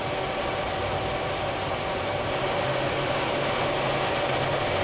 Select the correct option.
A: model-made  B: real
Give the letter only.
B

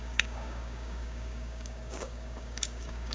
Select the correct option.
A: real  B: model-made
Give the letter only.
B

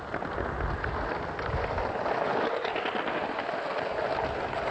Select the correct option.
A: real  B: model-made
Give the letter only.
A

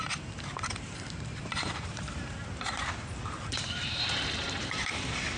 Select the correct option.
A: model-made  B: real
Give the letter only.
A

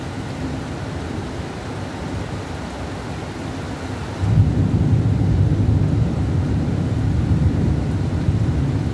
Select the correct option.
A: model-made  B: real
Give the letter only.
B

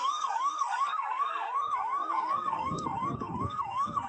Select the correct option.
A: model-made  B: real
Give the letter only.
A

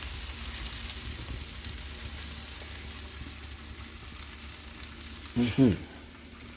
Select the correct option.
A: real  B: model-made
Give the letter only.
A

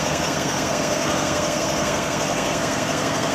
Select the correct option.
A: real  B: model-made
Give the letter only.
B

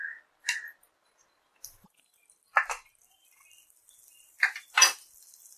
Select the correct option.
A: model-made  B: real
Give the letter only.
B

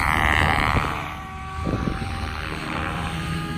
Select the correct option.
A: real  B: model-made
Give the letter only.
B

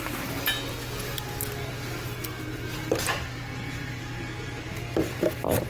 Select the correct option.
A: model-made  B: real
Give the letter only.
B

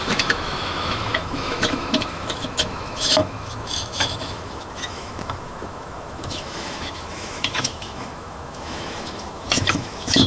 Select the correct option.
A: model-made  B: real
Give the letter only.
A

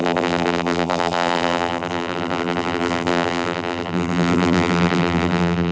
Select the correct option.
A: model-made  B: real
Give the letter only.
A